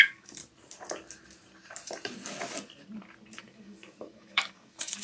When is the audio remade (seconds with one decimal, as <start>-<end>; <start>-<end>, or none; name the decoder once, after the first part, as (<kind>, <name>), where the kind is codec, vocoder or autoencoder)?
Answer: 0.0-0.4 (codec, DAC); 3.4-5.0